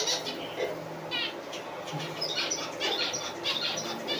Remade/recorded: recorded